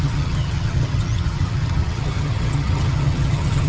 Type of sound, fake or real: fake